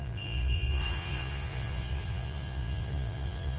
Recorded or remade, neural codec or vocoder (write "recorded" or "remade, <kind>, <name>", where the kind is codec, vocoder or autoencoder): remade, vocoder, Vocos